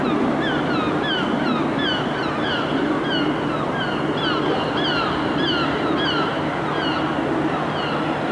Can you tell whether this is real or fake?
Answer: real